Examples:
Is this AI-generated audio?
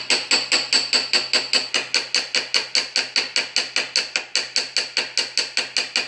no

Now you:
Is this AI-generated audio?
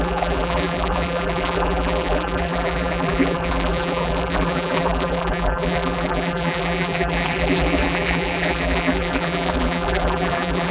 yes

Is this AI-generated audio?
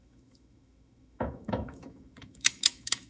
yes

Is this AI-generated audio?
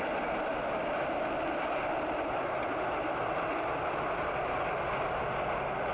no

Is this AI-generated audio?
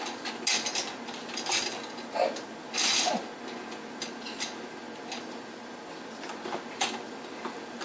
no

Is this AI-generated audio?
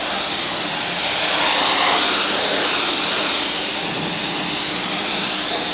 no